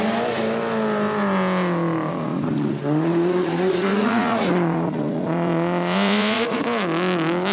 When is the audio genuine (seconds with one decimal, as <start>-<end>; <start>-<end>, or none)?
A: 0.0-2.1; 6.6-7.5

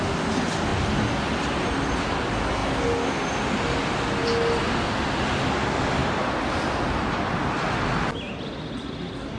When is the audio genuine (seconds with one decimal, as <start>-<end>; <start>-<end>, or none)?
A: 0.0-9.4

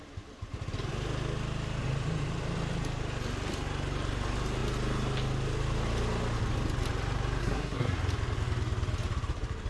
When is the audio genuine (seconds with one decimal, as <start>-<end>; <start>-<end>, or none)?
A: 0.0-7.4; 8.0-9.7